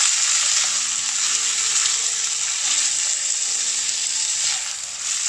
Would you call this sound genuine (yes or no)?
yes